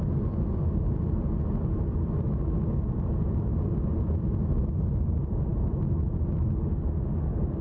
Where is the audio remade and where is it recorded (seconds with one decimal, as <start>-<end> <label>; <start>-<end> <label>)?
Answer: 0.0-3.5 recorded; 3.5-4.7 remade; 4.7-7.6 recorded